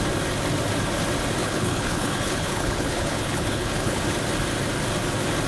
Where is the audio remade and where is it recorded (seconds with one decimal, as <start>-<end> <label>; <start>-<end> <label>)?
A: 0.0-1.4 recorded; 1.4-4.0 remade; 4.0-5.5 recorded